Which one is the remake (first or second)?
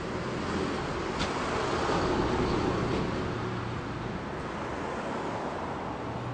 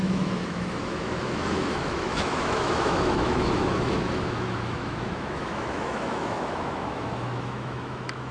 second